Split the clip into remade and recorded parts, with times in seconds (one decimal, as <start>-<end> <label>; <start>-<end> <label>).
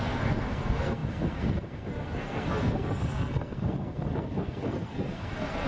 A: 0.0-5.7 remade